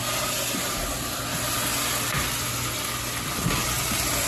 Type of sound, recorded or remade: recorded